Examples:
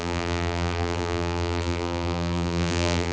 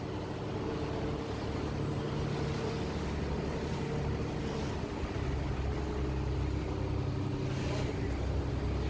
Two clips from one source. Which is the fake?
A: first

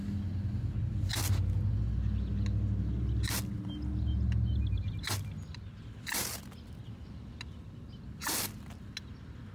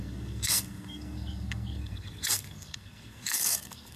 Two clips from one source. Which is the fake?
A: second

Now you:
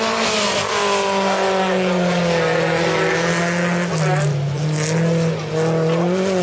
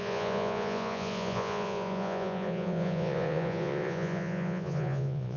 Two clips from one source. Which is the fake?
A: second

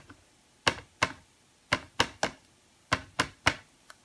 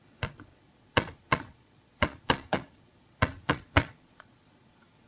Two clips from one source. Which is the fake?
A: second